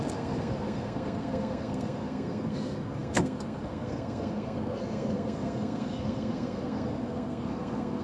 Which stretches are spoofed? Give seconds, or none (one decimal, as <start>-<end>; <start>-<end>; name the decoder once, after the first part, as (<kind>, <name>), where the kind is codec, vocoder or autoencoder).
0.0-8.0 (codec, SNAC)